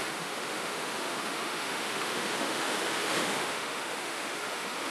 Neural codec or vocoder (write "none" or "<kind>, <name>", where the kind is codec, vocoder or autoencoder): autoencoder, DAC-VAE